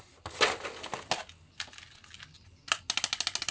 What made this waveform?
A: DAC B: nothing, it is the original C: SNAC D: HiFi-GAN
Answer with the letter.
B